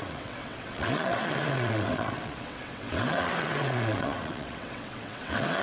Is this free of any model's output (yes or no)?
no